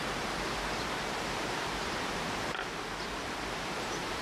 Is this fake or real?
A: fake